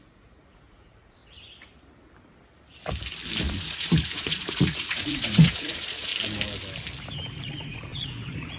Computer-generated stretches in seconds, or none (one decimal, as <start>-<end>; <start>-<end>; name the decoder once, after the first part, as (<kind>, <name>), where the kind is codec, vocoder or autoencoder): 0.0-1.2 (vocoder, Vocos); 3.4-6.1; 7.4-8.6